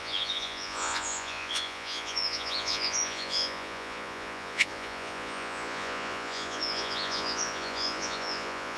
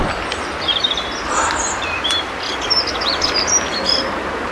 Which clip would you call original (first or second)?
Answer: second